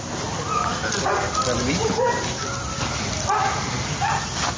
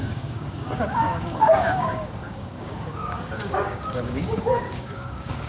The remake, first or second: second